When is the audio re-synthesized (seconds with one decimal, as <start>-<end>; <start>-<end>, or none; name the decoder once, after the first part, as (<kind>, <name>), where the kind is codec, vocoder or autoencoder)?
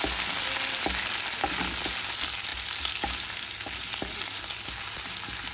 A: none